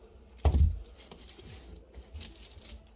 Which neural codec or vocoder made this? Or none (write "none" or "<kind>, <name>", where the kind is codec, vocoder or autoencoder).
none